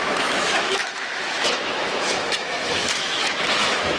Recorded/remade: remade